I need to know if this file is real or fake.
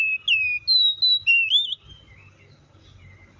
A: real